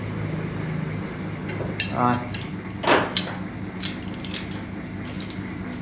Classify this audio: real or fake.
real